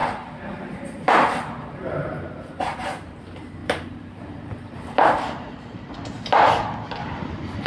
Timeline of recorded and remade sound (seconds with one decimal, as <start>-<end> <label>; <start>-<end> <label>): 0.0-3.2 remade; 3.2-3.6 recorded; 3.6-5.9 remade; 5.9-7.0 recorded; 7.0-7.7 remade